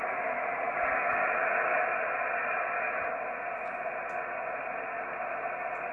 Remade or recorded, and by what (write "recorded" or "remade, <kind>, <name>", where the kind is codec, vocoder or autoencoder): recorded